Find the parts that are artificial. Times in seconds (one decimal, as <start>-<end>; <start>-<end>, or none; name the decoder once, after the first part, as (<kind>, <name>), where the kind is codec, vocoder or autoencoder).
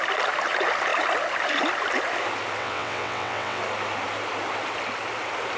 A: 2.6-3.6 (vocoder, WaveNeXt)